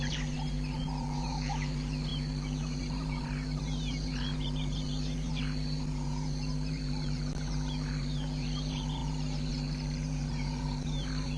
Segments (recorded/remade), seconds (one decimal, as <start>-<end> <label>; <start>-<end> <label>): 0.0-11.4 remade